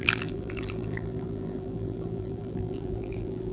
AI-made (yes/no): yes